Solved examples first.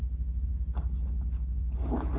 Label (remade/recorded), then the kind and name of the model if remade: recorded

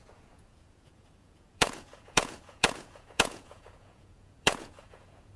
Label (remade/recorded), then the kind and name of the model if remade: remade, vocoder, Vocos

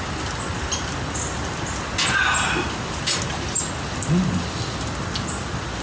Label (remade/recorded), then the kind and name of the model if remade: recorded